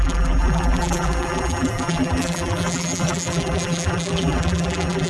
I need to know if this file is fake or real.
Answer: fake